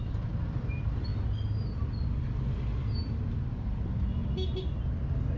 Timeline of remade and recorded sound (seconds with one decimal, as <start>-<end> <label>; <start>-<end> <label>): 0.0-5.4 recorded